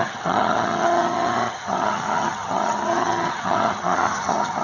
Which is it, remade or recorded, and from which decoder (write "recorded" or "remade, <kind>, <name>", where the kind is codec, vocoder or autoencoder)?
remade, vocoder, HiFi-GAN